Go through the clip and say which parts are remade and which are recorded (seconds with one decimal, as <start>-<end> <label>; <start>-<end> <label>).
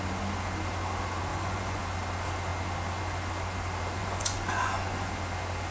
0.0-1.3 recorded; 1.3-1.8 remade; 1.8-4.0 recorded; 4.0-5.1 remade; 5.1-5.7 recorded